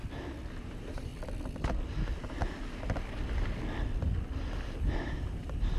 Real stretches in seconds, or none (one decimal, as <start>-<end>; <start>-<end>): 0.0-0.6; 1.1-4.6